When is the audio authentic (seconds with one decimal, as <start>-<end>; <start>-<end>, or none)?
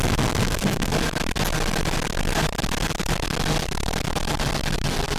0.0-0.4; 0.9-5.2